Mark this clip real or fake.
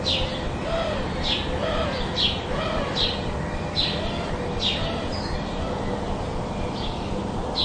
real